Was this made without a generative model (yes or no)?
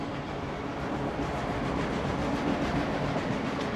yes